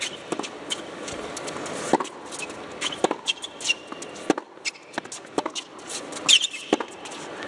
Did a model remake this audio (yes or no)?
no